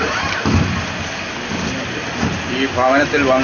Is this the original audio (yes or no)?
yes